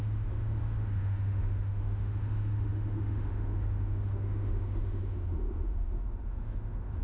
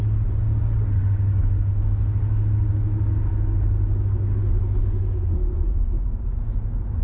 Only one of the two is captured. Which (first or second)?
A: second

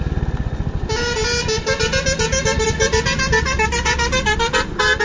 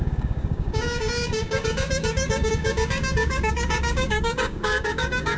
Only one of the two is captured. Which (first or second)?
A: first